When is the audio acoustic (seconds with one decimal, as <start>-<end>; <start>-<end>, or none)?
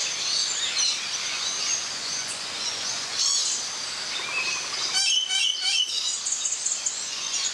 0.0-1.2; 3.4-6.9